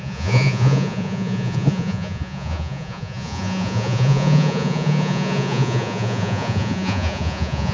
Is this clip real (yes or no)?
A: no